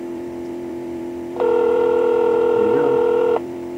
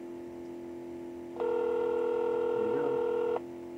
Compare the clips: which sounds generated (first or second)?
first